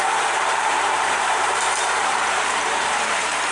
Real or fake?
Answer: fake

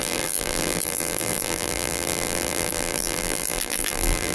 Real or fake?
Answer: fake